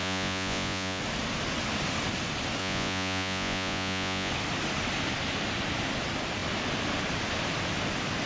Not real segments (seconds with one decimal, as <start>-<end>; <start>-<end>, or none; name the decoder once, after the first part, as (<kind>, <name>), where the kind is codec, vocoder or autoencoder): 0.0-1.0 (vocoder, Vocos); 2.6-4.3

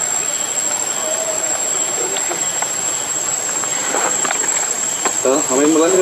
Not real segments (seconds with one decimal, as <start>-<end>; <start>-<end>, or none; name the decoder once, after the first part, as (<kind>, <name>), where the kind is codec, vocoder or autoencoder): 1.5-5.1 (vocoder, BigVGAN v2)

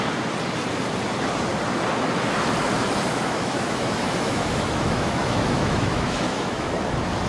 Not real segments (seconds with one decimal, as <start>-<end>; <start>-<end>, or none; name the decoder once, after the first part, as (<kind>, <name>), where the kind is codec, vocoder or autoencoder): 3.1-6.7 (autoencoder, DAC-VAE)